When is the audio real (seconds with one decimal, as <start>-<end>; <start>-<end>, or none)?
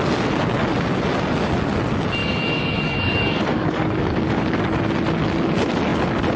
0.0-2.2; 4.6-6.4